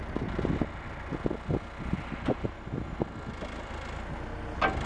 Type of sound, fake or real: real